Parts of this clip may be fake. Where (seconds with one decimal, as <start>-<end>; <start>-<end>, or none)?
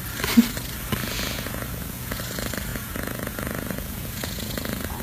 1.0-2.2; 2.7-5.0